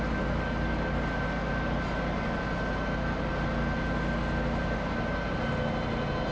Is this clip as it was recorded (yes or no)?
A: yes